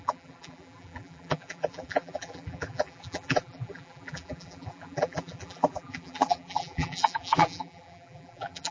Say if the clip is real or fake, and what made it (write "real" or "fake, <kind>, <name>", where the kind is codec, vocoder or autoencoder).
fake, vocoder, BigVGAN v2